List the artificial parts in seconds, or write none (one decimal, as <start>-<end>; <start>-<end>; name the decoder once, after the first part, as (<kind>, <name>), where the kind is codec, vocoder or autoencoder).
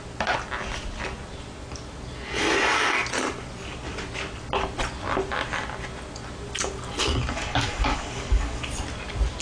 7.0-8.6 (codec, DAC)